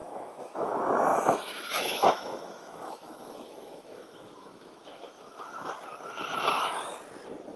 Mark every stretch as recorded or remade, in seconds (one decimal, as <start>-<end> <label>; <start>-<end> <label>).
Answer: 0.0-0.7 remade; 0.7-1.1 recorded; 1.1-5.7 remade; 5.7-7.6 recorded